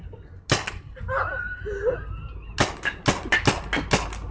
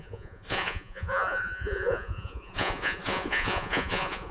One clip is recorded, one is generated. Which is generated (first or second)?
second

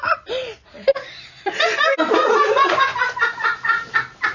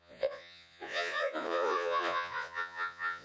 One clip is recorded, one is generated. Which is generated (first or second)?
second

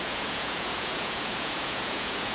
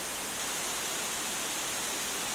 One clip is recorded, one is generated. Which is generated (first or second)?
first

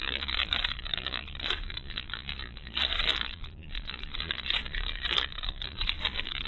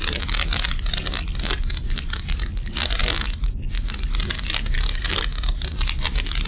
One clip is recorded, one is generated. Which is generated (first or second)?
first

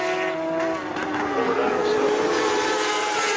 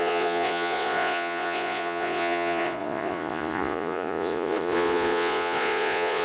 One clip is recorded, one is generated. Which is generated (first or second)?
second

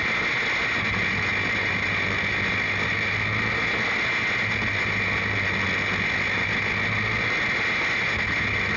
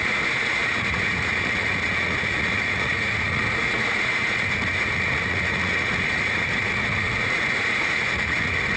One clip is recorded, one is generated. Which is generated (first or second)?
second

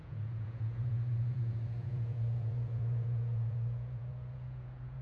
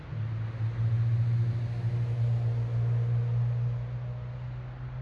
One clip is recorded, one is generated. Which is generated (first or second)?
first